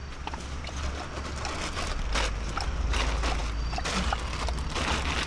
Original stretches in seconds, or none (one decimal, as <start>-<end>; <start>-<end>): 0.0-5.3